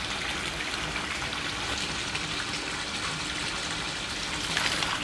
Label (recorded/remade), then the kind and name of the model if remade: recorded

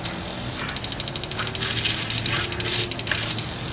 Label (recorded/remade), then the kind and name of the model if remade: recorded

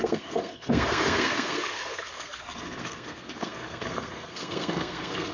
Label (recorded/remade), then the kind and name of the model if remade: remade, codec, SNAC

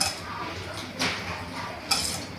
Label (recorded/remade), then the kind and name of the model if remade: recorded